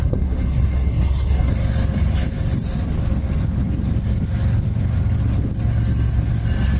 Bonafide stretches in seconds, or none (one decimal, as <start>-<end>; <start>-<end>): 1.5-6.8